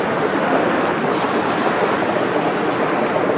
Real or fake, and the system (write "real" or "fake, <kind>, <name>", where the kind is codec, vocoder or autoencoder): real